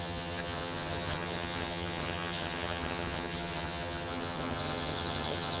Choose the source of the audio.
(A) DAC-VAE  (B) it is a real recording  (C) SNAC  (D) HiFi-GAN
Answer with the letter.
D